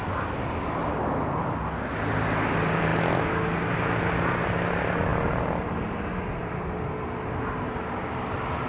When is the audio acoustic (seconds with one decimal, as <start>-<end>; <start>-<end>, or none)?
0.0-8.7